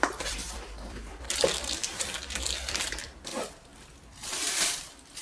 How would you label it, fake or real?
fake